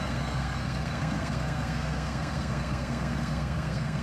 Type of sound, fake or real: fake